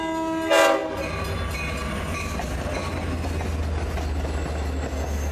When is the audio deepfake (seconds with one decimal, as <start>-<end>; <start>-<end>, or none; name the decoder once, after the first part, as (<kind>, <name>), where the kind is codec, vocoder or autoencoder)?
none